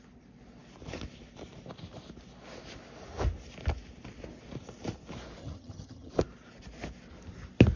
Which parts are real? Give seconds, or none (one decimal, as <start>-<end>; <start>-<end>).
0.0-5.4; 6.1-7.8